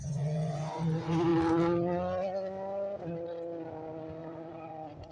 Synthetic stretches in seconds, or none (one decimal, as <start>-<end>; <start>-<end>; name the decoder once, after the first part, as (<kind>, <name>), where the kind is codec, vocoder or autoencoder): 0.0-1.3 (vocoder, Vocos); 4.2-5.1